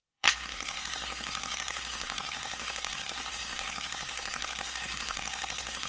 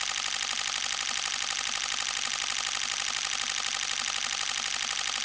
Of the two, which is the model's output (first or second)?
first